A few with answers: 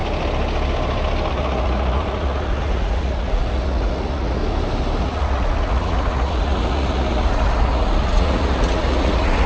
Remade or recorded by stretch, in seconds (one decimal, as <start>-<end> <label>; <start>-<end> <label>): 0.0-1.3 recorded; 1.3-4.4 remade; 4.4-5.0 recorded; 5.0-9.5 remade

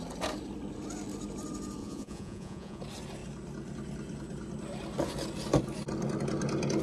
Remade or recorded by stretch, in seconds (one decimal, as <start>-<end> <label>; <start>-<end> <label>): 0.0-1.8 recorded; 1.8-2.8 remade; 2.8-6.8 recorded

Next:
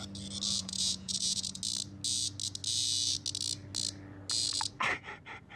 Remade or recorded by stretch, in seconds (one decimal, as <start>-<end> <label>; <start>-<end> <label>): 0.0-0.6 recorded; 0.6-1.6 remade; 1.6-5.6 recorded

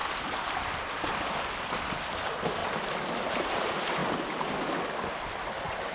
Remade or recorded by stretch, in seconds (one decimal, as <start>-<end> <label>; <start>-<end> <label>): 0.0-5.9 recorded